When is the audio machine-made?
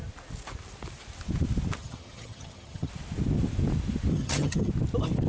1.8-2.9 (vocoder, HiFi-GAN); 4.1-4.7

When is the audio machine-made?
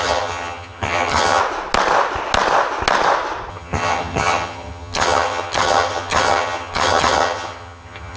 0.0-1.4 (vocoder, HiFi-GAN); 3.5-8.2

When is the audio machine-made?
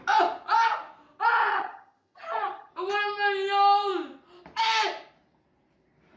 1.5-2.7 (vocoder, HiFi-GAN)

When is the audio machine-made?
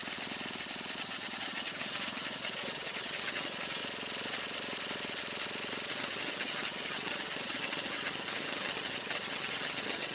1.0-3.8 (vocoder, HiFi-GAN); 5.9-10.1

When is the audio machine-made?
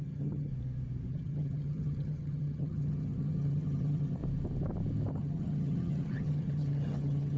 0.0-0.5 (vocoder, HiFi-GAN); 1.1-4.2; 5.1-7.4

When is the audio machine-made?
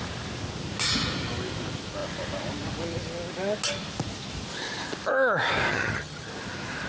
5.7-6.3 (vocoder, HiFi-GAN)